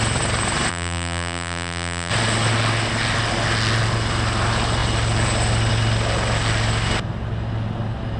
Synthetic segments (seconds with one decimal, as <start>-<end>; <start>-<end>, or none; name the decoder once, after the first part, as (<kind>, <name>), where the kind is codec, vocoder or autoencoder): 0.7-2.1 (vocoder, BigVGAN v2)